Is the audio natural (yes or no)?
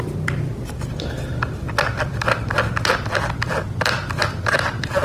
no